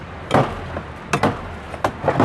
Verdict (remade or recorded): recorded